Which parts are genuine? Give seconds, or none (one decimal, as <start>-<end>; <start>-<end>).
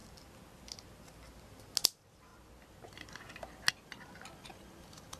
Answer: 0.0-5.2